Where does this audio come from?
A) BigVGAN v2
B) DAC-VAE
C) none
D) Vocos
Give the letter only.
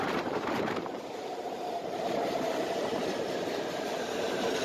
A